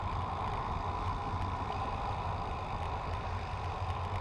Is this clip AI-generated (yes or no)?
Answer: no